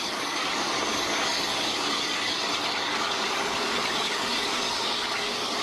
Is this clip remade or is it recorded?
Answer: remade